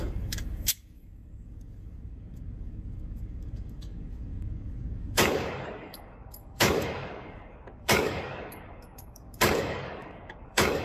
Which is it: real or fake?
fake